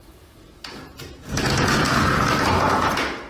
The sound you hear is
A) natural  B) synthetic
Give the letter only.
B